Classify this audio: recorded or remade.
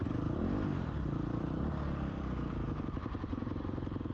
remade